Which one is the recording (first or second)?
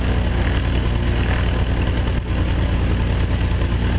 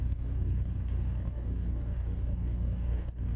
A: first